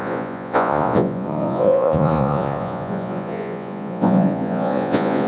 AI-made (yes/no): yes